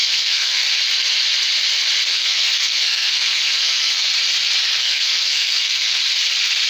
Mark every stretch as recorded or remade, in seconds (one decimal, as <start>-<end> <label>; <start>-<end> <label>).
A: 0.0-0.8 remade; 0.8-2.1 recorded; 2.1-4.1 remade; 4.1-4.8 recorded; 4.8-6.0 remade; 6.0-6.7 recorded

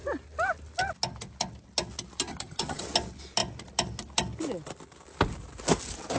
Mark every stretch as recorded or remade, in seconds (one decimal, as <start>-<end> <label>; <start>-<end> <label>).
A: 0.0-2.3 recorded; 2.3-2.8 remade; 2.8-6.2 recorded

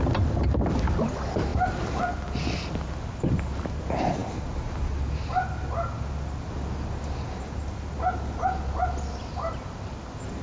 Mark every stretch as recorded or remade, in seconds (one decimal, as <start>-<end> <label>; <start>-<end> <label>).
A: 0.0-10.4 recorded

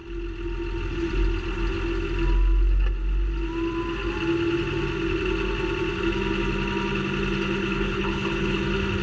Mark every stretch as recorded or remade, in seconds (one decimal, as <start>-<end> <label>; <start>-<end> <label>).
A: 0.0-7.6 recorded; 7.6-8.6 remade; 8.6-9.0 recorded

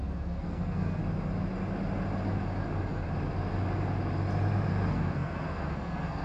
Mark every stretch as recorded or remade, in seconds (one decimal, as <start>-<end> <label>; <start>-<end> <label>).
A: 0.0-1.0 remade; 1.0-4.7 recorded; 4.7-6.2 remade

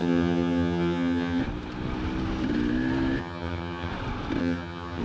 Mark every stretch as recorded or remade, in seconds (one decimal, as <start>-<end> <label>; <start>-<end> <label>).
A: 0.0-1.4 remade; 1.4-3.2 recorded; 3.2-3.9 remade; 3.9-4.4 recorded; 4.4-5.0 remade

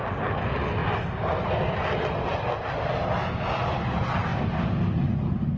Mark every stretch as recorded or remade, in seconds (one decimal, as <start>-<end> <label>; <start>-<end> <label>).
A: 0.0-5.6 recorded